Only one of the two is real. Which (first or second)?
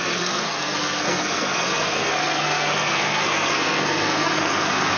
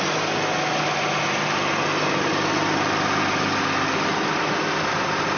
second